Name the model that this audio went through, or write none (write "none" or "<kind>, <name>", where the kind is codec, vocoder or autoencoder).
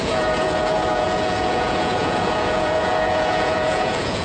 vocoder, Vocos